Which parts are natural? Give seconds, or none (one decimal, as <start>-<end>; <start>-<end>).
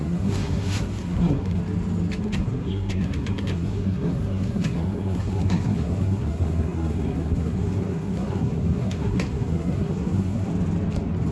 1.6-2.2; 10.5-11.3